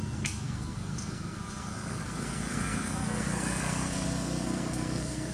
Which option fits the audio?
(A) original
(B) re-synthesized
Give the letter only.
B